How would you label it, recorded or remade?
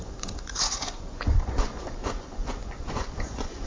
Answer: remade